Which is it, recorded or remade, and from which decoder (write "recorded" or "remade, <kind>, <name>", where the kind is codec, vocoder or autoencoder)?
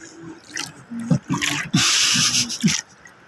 recorded